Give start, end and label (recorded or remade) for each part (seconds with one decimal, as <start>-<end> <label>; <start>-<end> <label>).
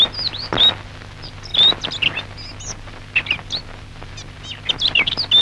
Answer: 0.0-5.4 recorded